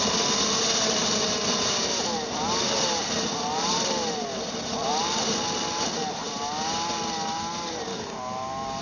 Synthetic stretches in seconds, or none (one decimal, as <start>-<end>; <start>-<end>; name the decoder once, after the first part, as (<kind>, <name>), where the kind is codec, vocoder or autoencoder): 7.9-8.8 (codec, DAC)